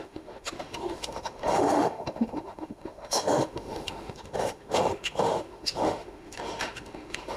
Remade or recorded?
remade